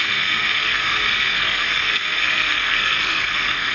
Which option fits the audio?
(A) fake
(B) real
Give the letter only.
A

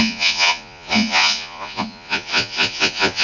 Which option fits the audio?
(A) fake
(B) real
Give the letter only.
A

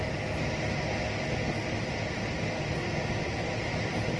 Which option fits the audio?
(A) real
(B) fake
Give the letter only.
A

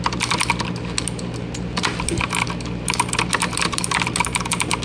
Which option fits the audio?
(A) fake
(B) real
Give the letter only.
B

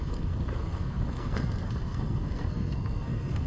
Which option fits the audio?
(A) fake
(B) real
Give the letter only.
A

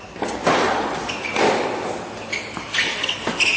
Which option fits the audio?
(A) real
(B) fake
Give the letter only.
A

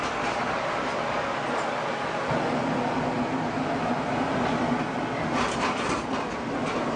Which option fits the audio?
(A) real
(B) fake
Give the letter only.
A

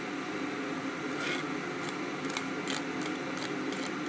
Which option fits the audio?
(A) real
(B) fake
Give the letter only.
A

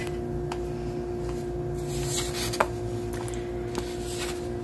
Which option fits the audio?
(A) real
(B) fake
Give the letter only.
A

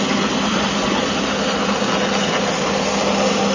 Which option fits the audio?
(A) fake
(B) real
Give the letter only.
B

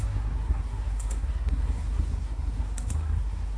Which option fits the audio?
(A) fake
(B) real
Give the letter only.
A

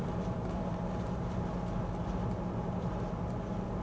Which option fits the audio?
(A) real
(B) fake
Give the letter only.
A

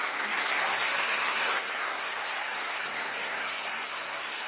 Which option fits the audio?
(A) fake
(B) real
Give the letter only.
A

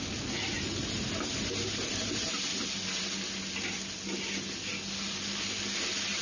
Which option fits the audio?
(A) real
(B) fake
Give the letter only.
A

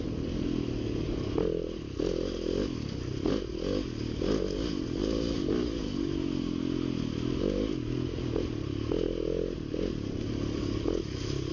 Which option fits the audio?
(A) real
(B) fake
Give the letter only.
A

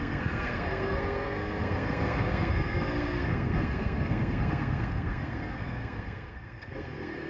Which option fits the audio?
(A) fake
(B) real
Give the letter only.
A